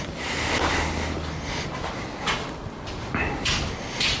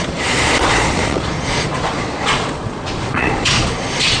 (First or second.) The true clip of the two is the first